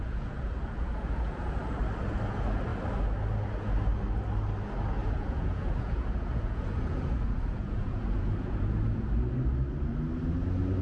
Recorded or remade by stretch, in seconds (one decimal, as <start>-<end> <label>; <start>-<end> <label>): 0.0-1.6 remade; 1.6-5.0 recorded; 5.0-9.1 remade; 9.1-10.8 recorded